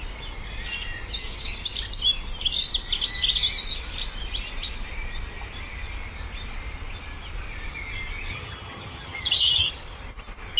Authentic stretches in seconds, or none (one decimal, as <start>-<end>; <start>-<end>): 0.0-8.3; 9.7-10.6

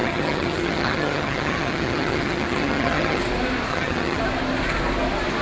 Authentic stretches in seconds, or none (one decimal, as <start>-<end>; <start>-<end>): 3.2-3.7; 4.2-5.4

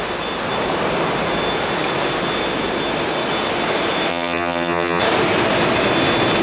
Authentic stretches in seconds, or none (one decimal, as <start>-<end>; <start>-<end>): 0.0-4.1; 5.0-6.4